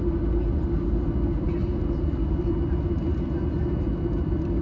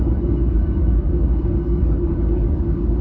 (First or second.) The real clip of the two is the first